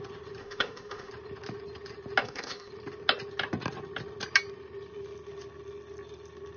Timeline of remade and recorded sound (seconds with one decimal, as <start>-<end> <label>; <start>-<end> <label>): 0.0-0.4 recorded; 0.4-1.1 remade; 1.1-2.2 recorded; 2.2-2.7 remade; 2.7-6.6 recorded